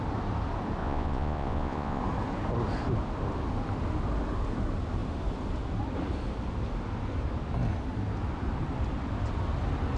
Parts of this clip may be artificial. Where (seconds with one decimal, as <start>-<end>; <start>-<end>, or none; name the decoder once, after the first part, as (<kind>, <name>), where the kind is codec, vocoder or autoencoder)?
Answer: 0.8-2.0 (vocoder, Vocos)

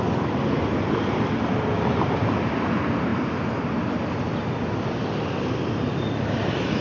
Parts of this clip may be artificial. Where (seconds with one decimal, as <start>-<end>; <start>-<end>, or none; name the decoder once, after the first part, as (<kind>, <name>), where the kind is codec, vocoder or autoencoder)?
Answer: none

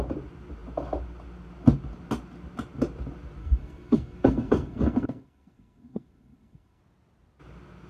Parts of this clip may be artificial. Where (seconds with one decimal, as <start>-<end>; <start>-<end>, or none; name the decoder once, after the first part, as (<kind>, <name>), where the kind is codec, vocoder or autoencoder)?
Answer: 3.4-6.8 (codec, SNAC)

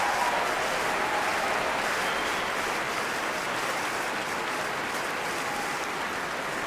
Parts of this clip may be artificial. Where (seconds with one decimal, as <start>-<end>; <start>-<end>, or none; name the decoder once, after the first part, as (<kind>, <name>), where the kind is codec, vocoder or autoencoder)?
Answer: none

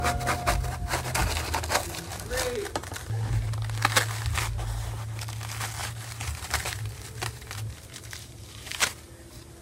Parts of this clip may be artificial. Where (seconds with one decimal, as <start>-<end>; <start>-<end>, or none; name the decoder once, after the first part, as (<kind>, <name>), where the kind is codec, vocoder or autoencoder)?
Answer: 5.8-8.8 (vocoder, BigVGAN v2)

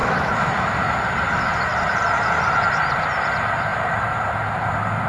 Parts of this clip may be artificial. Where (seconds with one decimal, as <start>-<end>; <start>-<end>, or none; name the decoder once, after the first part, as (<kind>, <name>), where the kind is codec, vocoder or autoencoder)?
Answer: 0.0-0.7 (autoencoder, DAC-VAE)